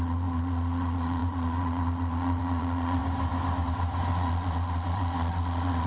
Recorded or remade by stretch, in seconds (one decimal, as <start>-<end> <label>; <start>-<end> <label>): 0.0-3.0 remade; 3.0-4.1 recorded; 4.1-5.9 remade